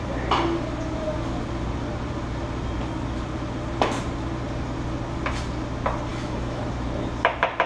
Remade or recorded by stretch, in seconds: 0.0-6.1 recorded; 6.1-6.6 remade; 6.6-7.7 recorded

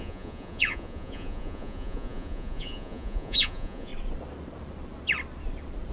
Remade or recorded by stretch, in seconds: 0.0-3.9 remade; 3.9-5.9 recorded

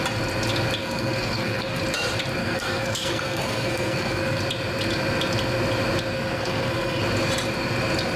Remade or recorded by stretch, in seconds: 0.0-0.8 recorded; 0.8-1.8 remade; 1.8-2.4 recorded; 2.4-4.4 remade; 4.4-6.1 recorded; 6.1-7.0 remade; 7.0-8.2 recorded

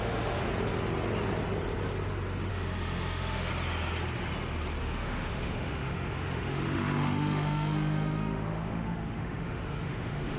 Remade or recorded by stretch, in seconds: 0.0-0.5 remade; 0.5-2.5 recorded; 2.5-3.5 remade; 3.5-4.8 recorded; 4.8-10.4 remade

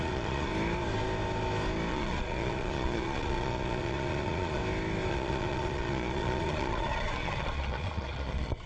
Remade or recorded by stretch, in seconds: 0.0-0.5 remade; 0.5-1.9 recorded; 1.9-4.6 remade; 4.6-5.1 recorded; 5.1-8.7 remade

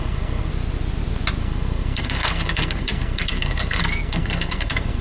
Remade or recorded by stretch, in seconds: 0.0-0.5 remade; 0.5-1.4 recorded; 1.4-5.0 remade

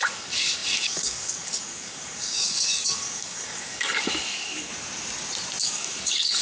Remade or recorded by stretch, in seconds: 0.0-4.7 remade; 4.7-5.6 recorded; 5.6-6.4 remade